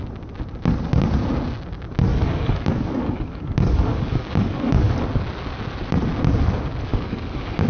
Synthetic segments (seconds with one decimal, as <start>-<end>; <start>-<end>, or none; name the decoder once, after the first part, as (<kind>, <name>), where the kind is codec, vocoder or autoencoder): 2.1-4.9 (codec, DAC); 6.9-7.7